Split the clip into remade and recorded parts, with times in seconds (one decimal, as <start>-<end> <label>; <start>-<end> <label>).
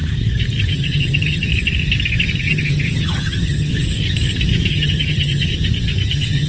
0.0-0.7 recorded; 0.7-1.5 remade; 1.5-2.4 recorded; 2.4-3.7 remade; 3.7-4.7 recorded; 4.7-5.5 remade; 5.5-6.1 recorded; 6.1-6.5 remade